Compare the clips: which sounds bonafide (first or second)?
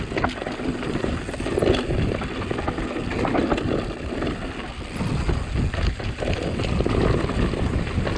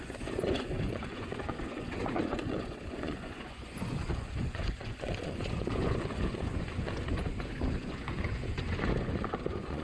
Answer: first